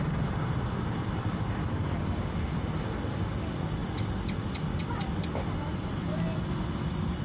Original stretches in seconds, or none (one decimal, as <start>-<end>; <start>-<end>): 0.0-3.8; 5.0-7.2